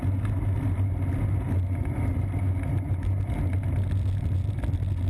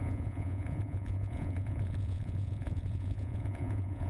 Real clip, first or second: first